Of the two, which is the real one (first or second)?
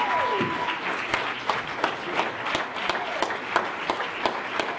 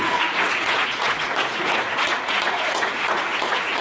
first